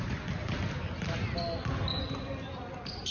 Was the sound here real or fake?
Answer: real